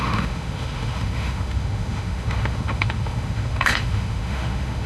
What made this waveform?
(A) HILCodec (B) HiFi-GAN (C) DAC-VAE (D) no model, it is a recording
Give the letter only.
C